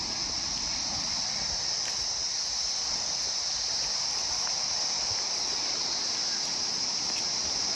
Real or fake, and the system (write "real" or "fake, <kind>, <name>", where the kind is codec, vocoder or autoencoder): real